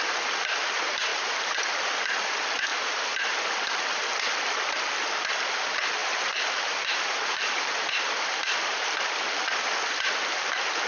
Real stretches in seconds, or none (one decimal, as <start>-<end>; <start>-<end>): 0.0-1.1; 1.6-2.7; 3.4-6.0; 7.7-10.9